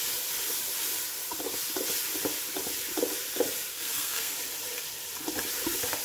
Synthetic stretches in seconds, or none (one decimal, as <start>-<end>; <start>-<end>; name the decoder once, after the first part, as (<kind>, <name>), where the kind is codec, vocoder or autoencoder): 3.7-4.3 (codec, SNAC)